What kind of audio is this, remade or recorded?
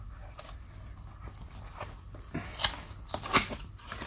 recorded